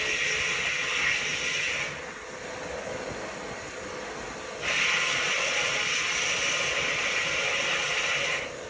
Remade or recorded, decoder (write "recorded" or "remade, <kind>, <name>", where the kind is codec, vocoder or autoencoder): recorded